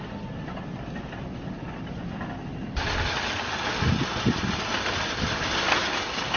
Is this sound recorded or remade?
recorded